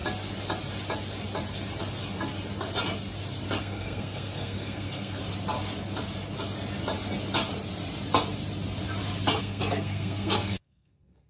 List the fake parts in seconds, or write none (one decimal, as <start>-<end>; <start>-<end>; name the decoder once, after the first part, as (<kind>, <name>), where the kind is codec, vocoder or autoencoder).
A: 3.6-5.2 (codec, SNAC); 9.4-11.3